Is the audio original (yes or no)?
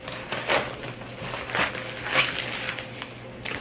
yes